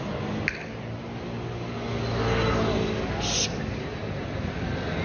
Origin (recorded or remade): recorded